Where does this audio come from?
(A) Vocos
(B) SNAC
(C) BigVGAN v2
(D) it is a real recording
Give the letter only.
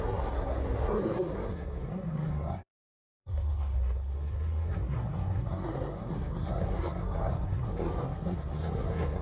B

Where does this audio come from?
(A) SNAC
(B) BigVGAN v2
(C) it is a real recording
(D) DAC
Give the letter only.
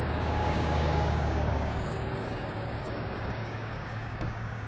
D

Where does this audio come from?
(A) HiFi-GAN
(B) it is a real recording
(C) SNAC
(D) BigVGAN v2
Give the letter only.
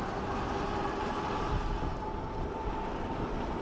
D